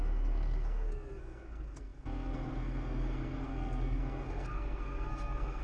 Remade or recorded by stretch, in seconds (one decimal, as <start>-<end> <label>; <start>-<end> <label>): 0.0-5.6 remade